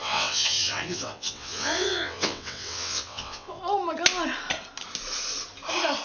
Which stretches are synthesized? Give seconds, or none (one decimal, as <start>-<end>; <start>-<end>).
0.0-3.6